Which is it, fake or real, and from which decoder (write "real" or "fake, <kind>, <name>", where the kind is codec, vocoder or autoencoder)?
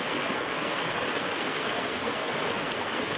fake, codec, SNAC